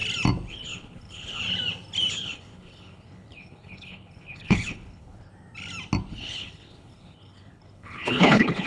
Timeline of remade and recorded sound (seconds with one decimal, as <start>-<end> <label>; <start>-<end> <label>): 0.0-0.5 recorded; 0.5-1.4 remade; 1.4-2.1 recorded; 2.1-5.3 remade; 5.3-6.1 recorded; 6.1-8.7 remade